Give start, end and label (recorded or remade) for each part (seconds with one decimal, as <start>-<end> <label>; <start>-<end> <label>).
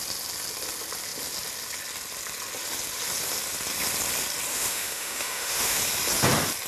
0.0-4.5 recorded; 4.5-5.8 remade; 5.8-6.7 recorded